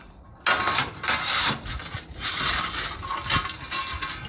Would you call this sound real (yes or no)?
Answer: yes